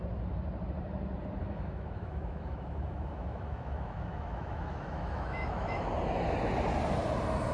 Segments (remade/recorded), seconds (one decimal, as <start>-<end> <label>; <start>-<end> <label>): 0.0-1.4 recorded; 1.4-5.9 remade; 5.9-7.5 recorded

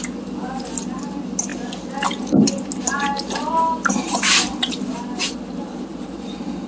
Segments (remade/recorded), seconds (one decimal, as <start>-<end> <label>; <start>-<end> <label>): 0.0-6.7 recorded

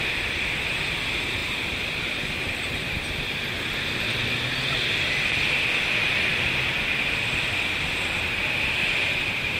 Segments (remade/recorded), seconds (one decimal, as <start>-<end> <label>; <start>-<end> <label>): 0.0-9.6 recorded

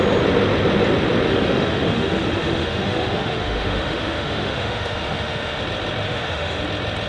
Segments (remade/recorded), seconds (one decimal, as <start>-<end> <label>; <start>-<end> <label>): 0.0-1.3 recorded; 1.3-5.6 remade; 5.6-6.0 recorded; 6.0-6.6 remade; 6.6-7.1 recorded

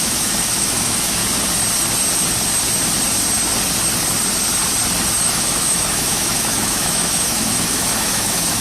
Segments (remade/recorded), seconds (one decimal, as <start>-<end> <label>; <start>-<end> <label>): 0.0-1.2 remade; 1.2-5.2 recorded; 5.2-8.6 remade

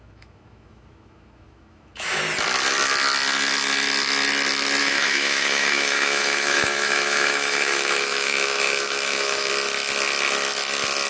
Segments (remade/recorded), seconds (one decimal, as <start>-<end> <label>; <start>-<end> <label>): 0.0-2.2 remade; 2.2-4.8 recorded; 4.8-9.5 remade; 9.5-11.1 recorded

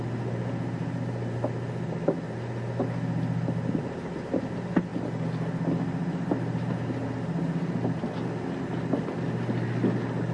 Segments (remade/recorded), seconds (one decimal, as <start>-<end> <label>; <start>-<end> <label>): 0.0-10.3 recorded